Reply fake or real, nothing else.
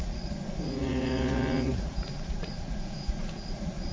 fake